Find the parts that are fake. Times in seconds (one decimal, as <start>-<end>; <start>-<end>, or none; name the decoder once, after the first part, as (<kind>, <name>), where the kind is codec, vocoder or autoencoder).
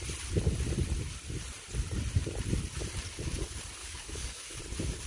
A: 3.8-4.6 (codec, DAC)